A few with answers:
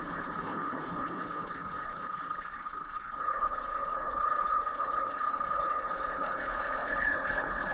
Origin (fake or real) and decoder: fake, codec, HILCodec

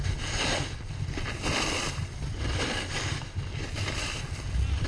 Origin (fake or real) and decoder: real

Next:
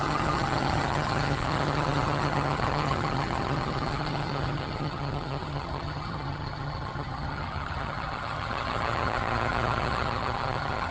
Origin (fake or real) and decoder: fake, vocoder, HiFi-GAN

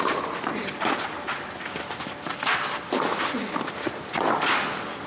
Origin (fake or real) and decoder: real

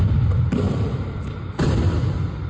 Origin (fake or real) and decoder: fake, vocoder, BigVGAN v2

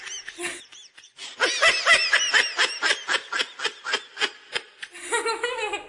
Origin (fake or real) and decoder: real